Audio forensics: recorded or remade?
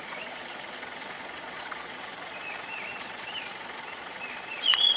remade